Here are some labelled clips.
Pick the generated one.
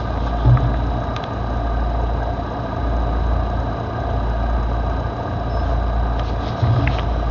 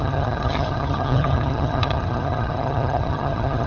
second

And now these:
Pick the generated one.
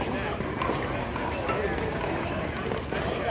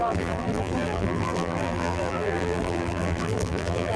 second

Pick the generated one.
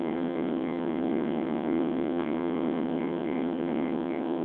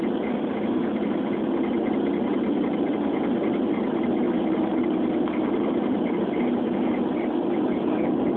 first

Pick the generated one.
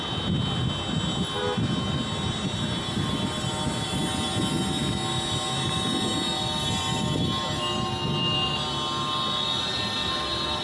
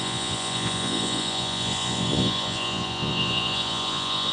second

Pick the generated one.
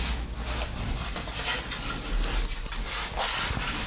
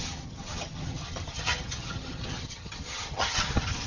second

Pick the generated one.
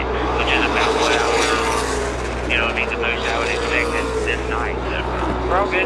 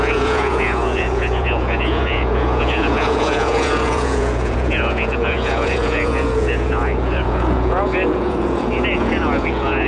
second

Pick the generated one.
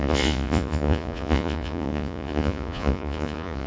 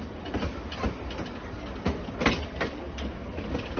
first